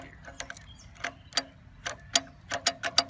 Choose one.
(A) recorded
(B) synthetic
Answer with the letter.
A